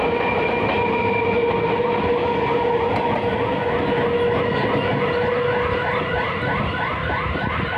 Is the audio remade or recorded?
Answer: recorded